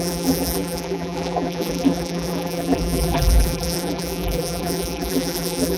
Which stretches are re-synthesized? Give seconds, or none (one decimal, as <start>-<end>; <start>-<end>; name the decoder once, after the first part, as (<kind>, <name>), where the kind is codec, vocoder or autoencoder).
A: 0.0-5.8 (vocoder, BigVGAN v2)

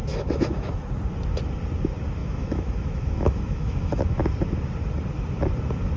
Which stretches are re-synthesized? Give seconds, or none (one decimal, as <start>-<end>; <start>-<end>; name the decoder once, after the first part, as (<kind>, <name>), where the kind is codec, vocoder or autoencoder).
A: 0.0-0.9 (autoencoder, DAC-VAE); 2.2-4.0

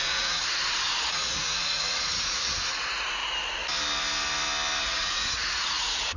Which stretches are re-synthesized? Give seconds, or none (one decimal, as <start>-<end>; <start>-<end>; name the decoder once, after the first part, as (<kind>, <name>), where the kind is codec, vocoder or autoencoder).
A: 0.0-0.4 (vocoder, Vocos); 1.0-3.2; 4.8-6.2

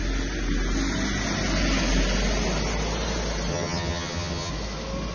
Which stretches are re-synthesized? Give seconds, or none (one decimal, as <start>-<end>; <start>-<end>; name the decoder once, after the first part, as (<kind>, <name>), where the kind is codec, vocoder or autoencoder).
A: 3.5-4.5 (vocoder, HiFi-GAN)